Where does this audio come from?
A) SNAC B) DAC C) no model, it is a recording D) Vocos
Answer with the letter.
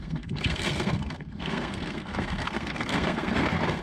A